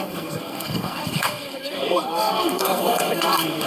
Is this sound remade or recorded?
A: remade